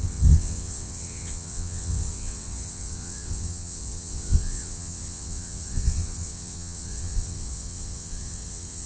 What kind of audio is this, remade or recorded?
remade